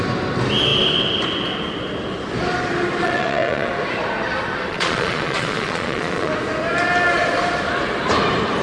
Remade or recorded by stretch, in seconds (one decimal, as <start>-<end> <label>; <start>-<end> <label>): 0.0-3.0 recorded; 3.0-3.7 remade; 3.7-4.7 recorded; 4.7-6.3 remade; 6.3-8.6 recorded